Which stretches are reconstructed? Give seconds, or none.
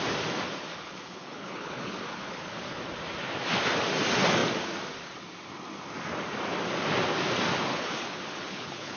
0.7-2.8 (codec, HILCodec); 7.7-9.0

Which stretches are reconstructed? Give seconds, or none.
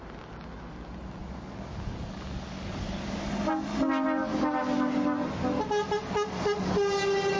1.2-3.3 (codec, DAC)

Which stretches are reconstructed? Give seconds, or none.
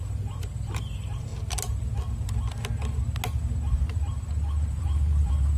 0.0-1.3 (vocoder, BigVGAN v2); 4.7-5.6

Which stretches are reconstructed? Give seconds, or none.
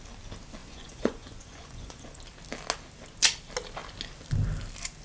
0.6-2.2 (vocoder, Vocos)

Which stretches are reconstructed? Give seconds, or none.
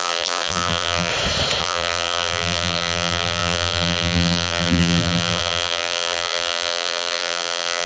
0.0-1.1 (vocoder, BigVGAN v2); 1.6-7.9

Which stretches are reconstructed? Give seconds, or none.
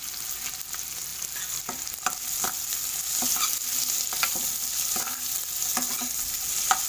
none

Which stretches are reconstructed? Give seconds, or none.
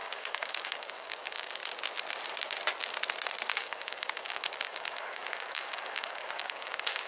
0.0-1.6 (codec, DAC); 3.5-7.1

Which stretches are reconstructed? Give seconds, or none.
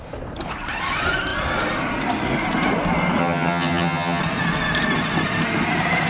3.2-4.2 (vocoder, HiFi-GAN)